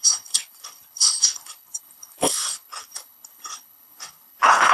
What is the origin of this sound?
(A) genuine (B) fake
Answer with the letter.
B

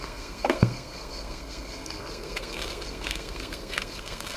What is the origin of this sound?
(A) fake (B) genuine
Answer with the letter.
A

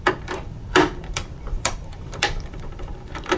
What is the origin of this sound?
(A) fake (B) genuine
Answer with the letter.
A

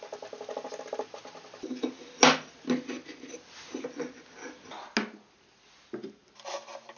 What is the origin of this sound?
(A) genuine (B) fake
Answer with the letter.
A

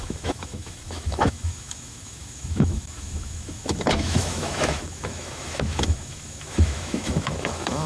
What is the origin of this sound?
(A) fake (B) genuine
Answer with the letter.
A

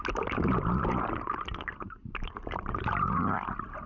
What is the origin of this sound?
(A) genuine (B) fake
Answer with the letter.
A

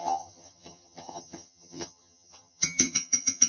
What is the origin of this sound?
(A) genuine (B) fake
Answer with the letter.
B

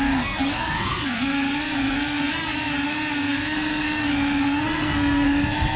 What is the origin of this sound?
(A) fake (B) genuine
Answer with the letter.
A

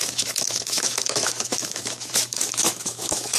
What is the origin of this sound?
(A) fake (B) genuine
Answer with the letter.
A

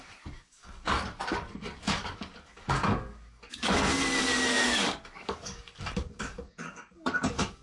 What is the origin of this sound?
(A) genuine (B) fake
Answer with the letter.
B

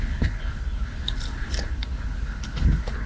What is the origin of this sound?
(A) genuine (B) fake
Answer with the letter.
B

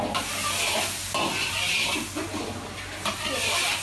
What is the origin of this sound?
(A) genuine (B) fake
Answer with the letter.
A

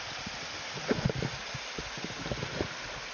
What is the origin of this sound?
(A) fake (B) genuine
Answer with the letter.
B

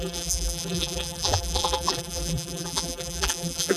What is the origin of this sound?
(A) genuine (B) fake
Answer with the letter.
B